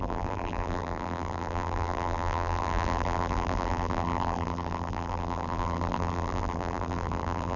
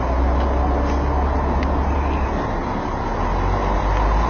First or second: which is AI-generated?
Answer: first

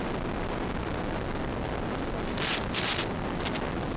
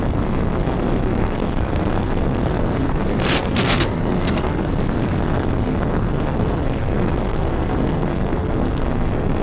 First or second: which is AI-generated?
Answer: second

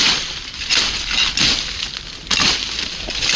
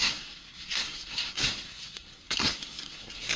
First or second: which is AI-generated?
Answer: second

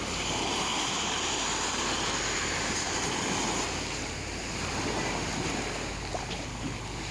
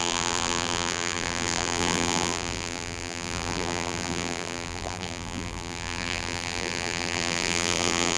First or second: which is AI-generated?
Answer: second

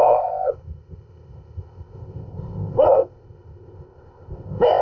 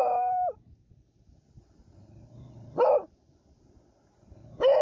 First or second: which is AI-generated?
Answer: first